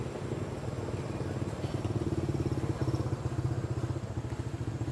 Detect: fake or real real